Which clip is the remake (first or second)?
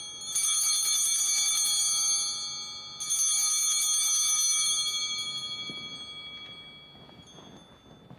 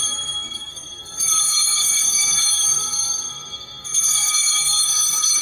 second